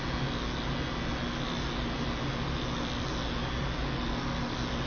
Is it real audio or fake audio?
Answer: real